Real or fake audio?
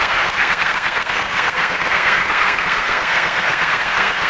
fake